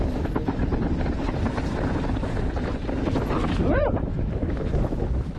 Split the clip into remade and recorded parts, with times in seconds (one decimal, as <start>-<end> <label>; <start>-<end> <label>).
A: 0.0-0.7 remade; 0.7-3.9 recorded; 3.9-5.4 remade